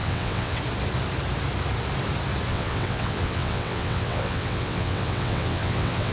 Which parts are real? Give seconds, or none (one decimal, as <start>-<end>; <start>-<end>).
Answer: 0.6-2.5

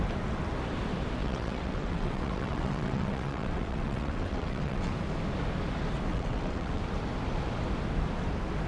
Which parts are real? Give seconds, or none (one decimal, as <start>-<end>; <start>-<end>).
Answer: 0.0-1.2; 4.9-6.1; 6.8-8.7

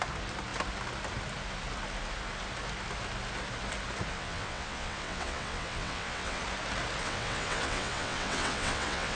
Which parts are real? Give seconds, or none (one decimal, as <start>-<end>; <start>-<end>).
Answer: 0.0-4.1; 6.4-7.0

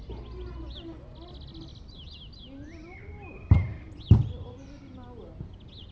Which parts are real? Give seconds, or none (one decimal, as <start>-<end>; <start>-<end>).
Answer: 0.0-5.9

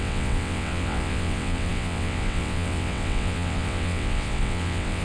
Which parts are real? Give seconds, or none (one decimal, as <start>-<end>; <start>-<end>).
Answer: none

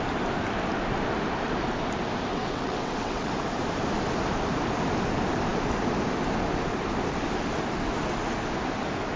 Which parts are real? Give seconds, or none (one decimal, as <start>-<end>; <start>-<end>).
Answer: 0.0-2.3; 3.3-9.2